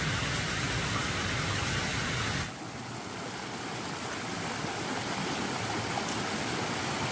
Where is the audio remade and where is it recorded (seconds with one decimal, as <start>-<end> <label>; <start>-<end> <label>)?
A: 0.0-7.1 recorded